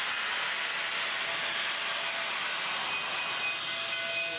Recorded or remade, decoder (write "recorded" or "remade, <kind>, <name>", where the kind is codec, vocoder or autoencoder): recorded